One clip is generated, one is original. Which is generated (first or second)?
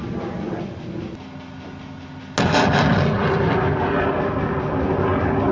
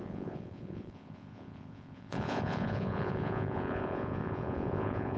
second